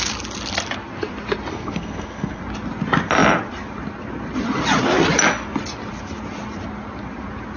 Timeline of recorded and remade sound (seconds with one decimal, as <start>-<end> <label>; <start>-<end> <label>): 0.0-1.5 recorded; 1.5-2.4 remade; 2.4-7.6 recorded